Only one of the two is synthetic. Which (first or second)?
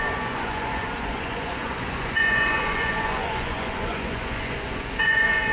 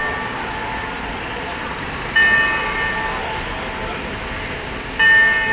first